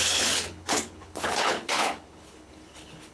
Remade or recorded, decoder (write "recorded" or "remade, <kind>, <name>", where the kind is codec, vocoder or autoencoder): remade, codec, HILCodec